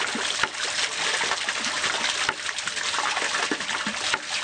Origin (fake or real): real